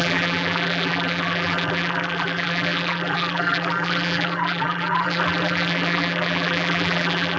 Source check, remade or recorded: remade